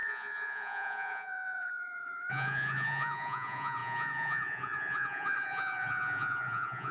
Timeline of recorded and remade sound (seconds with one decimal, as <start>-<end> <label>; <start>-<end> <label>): 0.0-6.9 remade